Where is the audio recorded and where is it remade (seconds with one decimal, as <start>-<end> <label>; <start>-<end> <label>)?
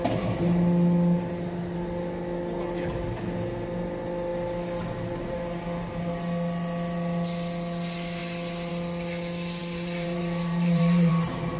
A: 0.0-9.6 recorded; 9.6-11.1 remade; 11.1-11.6 recorded